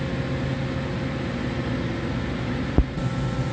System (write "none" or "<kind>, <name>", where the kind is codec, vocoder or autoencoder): none